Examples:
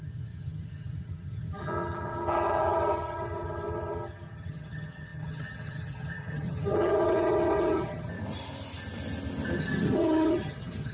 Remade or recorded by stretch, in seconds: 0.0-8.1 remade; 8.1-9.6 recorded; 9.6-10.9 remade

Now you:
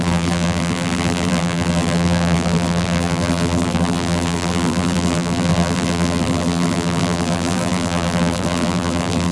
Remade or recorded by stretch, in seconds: 0.0-9.3 remade

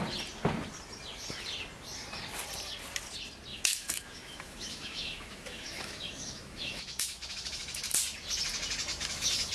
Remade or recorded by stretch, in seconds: 0.0-3.5 recorded; 3.5-7.9 remade; 7.9-8.9 recorded; 8.9-9.5 remade

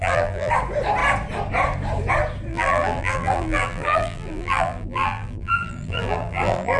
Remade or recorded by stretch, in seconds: 0.0-0.5 remade; 0.5-2.5 recorded; 2.5-6.8 remade

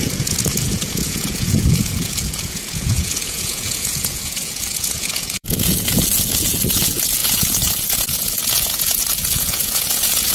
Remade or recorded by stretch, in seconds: 0.0-10.3 remade

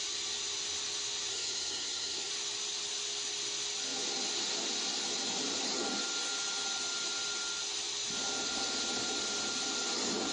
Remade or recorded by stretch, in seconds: 0.0-1.3 recorded; 1.3-2.3 remade; 2.3-10.3 recorded

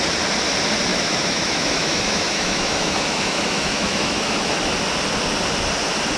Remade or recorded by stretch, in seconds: 0.0-0.9 recorded; 0.9-4.6 remade; 4.6-6.2 recorded